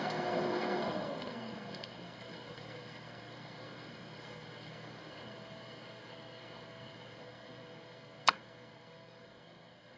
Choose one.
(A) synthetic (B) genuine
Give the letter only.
A